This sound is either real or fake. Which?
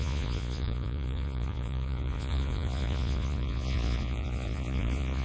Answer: fake